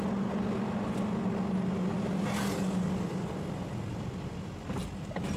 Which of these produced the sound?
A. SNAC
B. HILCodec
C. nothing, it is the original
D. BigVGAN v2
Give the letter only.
C